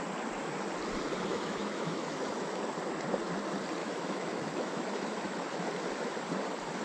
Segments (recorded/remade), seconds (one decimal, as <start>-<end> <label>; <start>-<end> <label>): 0.0-1.3 recorded; 1.3-2.6 remade; 2.6-3.8 recorded; 3.8-5.7 remade; 5.7-6.8 recorded